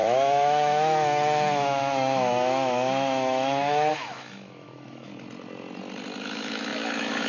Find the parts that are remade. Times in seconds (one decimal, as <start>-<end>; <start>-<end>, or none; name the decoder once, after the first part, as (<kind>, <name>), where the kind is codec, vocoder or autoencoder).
0.0-5.1 (autoencoder, DAC-VAE); 6.2-7.3